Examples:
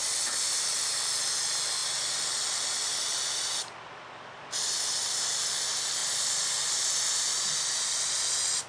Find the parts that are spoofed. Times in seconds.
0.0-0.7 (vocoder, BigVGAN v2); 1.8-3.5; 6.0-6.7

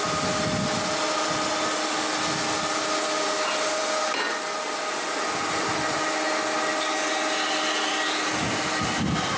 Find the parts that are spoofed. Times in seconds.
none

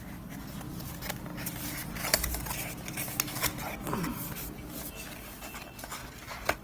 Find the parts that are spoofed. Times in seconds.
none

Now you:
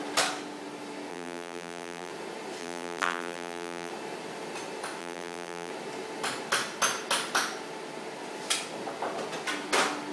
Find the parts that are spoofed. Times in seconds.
1.1-2.1 (vocoder, BigVGAN v2); 2.6-3.9; 5.0-5.7

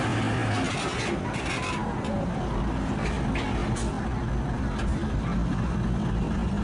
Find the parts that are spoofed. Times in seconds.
none

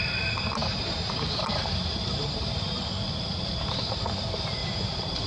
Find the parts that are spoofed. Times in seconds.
0.6-2.9 (vocoder, BigVGAN v2); 4.6-5.3